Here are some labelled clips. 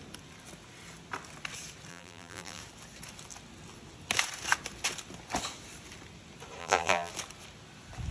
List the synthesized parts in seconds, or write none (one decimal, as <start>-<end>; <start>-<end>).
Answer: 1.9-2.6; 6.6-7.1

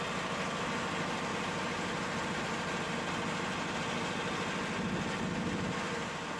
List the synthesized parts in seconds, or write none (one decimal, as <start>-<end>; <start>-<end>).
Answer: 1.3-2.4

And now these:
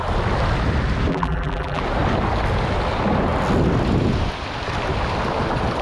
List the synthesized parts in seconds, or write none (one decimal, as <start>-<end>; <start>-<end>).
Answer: 1.1-1.8

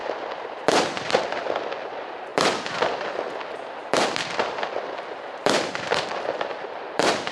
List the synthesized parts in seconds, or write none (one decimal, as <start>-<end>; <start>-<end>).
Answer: 0.0-1.2; 2.3-2.8; 3.8-7.3

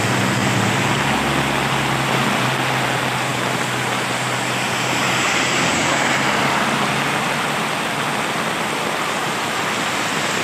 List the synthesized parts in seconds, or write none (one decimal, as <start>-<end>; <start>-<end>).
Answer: none